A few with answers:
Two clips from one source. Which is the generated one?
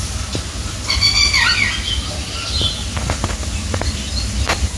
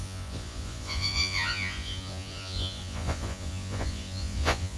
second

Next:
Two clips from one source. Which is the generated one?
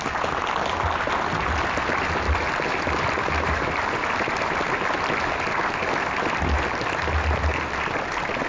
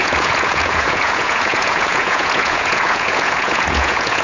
second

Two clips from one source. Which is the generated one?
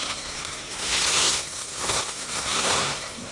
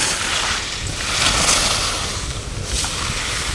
first